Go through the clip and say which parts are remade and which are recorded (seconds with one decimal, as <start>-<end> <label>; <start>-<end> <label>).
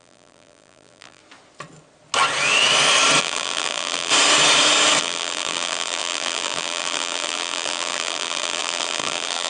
0.0-1.2 remade; 1.2-3.2 recorded; 3.2-4.1 remade; 4.1-5.0 recorded; 5.0-9.5 remade